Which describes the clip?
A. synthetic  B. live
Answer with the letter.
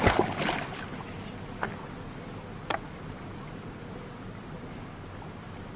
B